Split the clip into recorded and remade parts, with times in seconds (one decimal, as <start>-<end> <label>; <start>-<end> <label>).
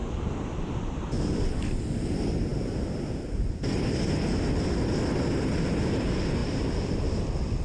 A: 0.0-1.2 recorded; 1.2-2.5 remade; 2.5-5.6 recorded; 5.6-7.6 remade